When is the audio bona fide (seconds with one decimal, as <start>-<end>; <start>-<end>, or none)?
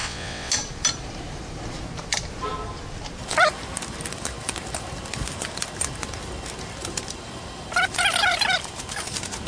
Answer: 0.5-9.5